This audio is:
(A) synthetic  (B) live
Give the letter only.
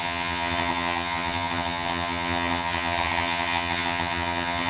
A